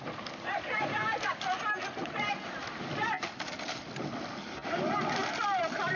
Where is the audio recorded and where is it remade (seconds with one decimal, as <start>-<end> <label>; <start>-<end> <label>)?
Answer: 0.0-6.0 recorded